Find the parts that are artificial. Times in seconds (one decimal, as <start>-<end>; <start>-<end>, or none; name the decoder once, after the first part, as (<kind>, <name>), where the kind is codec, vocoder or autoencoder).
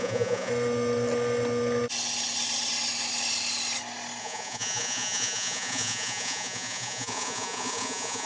0.0-0.5 (vocoder, Vocos); 4.2-8.3